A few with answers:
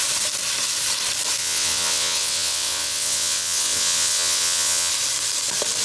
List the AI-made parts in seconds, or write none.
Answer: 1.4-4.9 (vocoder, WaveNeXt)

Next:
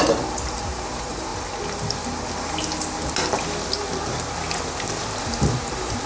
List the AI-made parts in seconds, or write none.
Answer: 0.0-1.3 (vocoder, BigVGAN v2); 5.0-6.1

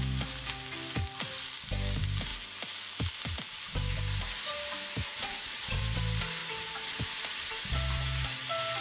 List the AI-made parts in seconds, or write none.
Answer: 5.0-5.8 (vocoder, Vocos)

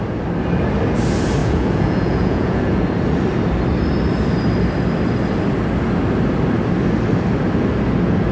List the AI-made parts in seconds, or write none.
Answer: 1.4-2.8 (vocoder, Vocos)